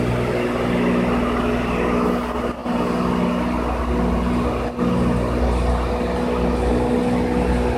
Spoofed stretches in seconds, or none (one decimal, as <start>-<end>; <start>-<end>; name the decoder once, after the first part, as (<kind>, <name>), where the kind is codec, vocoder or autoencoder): none